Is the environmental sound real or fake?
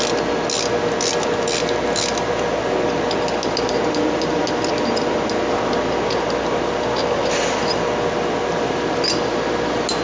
real